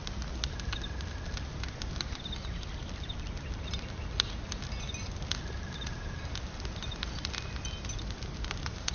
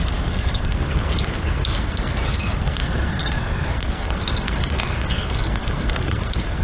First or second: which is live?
first